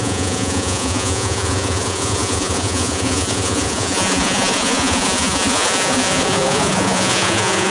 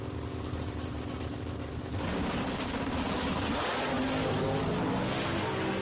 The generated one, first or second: first